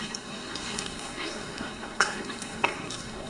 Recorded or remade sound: remade